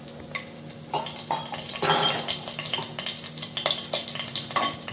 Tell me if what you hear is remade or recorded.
recorded